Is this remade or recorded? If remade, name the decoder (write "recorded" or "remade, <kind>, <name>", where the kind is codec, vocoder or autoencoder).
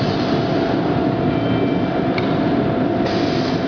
recorded